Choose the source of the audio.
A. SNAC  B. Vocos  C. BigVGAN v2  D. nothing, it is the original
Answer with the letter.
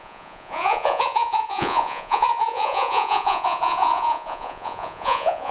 B